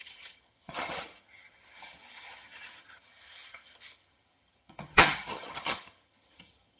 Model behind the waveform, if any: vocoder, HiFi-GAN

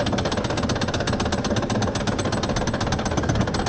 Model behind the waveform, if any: none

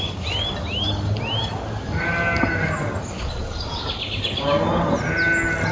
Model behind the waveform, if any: none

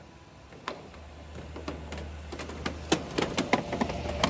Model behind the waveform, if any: none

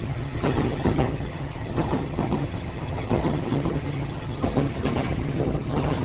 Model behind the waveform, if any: vocoder, HiFi-GAN